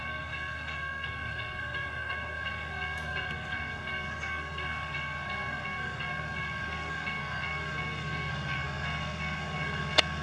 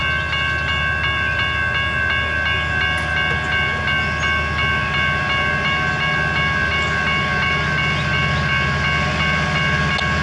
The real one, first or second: second